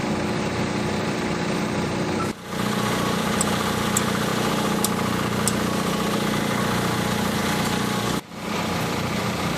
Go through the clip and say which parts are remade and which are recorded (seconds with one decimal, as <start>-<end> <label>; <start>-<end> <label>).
0.0-1.0 recorded; 1.0-4.3 remade; 4.3-6.4 recorded; 6.4-9.6 remade